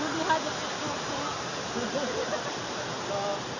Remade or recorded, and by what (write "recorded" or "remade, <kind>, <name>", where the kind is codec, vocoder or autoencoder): recorded